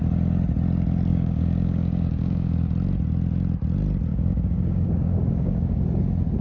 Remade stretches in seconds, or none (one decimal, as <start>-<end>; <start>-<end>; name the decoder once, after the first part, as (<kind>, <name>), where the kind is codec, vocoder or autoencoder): 1.1-2.7 (codec, DAC); 4.1-5.8